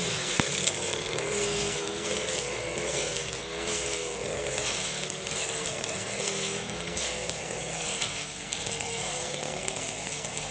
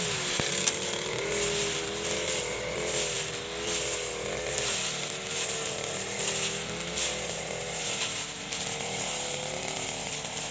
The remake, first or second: first